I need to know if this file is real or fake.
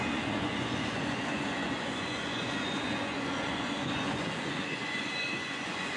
fake